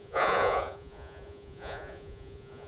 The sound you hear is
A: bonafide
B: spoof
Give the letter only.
B